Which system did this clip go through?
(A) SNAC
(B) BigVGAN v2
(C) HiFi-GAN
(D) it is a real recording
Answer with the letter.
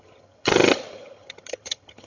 C